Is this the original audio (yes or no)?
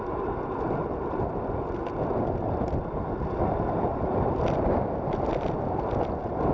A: yes